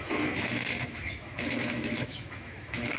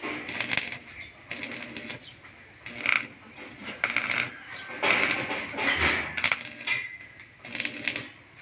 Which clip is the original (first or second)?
second